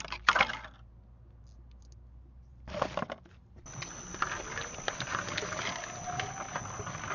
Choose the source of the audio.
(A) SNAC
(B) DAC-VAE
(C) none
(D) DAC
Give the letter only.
C